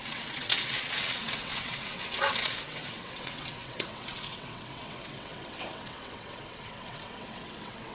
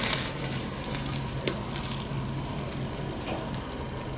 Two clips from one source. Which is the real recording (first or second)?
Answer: second